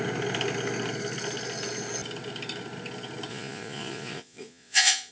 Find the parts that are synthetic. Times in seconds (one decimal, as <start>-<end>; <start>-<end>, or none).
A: 3.3-5.1